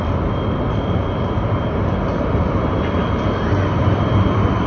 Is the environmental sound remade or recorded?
recorded